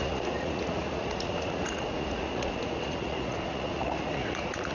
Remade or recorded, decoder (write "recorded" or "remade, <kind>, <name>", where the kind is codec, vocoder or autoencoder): remade, vocoder, Vocos